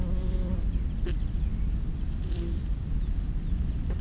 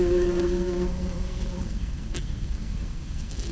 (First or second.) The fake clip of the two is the second